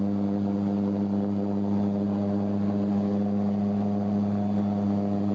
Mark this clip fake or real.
real